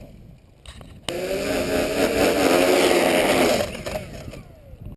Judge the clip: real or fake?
real